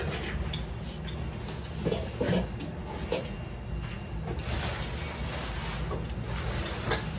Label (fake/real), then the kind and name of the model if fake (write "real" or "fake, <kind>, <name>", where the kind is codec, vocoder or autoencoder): real